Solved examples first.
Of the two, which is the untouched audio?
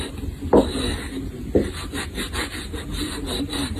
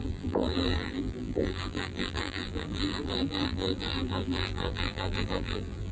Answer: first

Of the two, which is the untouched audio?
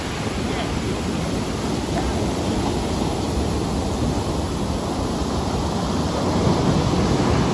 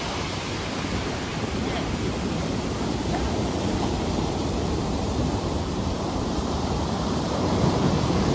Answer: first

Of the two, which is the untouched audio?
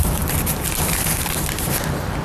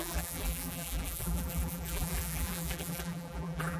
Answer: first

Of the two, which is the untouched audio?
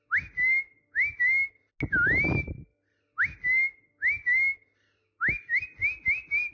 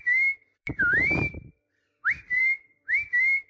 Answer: first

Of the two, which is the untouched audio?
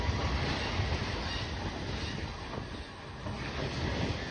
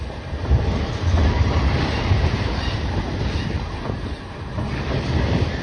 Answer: first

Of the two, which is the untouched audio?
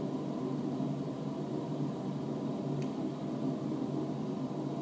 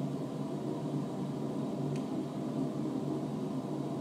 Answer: second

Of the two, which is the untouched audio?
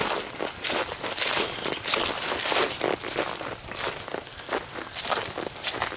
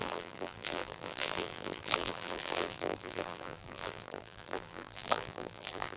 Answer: first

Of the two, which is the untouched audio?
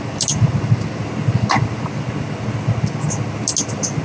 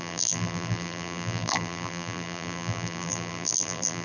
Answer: first